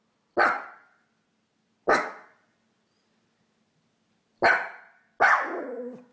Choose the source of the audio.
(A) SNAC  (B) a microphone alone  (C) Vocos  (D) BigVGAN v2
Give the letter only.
B